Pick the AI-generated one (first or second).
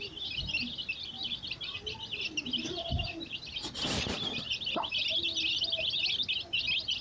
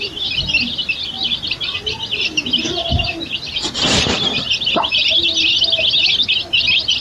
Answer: first